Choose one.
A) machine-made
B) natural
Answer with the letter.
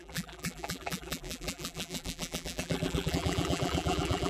A